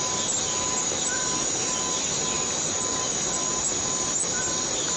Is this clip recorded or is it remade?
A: recorded